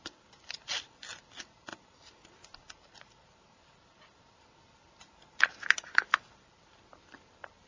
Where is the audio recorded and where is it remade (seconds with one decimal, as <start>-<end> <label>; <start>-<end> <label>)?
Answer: 0.0-7.7 recorded